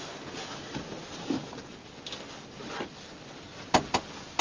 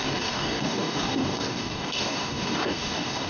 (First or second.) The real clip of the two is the first